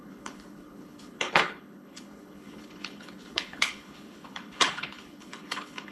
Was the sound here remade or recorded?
remade